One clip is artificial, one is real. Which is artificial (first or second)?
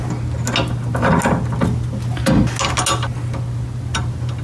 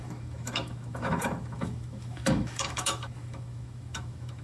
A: second